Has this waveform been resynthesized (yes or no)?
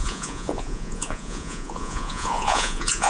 yes